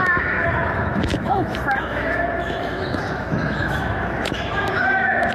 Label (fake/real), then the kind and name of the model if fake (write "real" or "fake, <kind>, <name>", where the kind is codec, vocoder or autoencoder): fake, autoencoder, DAC-VAE